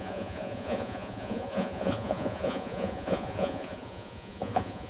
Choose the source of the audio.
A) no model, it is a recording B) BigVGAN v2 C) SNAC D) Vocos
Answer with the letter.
D